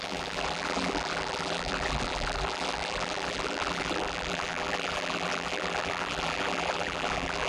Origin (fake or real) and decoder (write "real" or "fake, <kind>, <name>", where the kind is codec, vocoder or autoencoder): fake, vocoder, BigVGAN v2